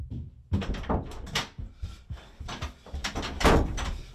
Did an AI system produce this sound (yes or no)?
yes